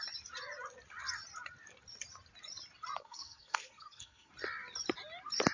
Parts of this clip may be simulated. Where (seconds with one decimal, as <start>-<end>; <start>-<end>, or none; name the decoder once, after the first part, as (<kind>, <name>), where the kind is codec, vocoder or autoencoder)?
3.0-4.3 (codec, SNAC)